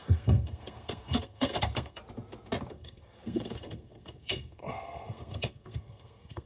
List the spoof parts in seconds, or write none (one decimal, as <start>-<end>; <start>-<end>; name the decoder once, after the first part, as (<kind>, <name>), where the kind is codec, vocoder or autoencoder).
0.0-2.0 (codec, SNAC); 2.7-6.5